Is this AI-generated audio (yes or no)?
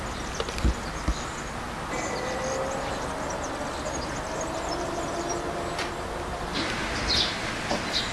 no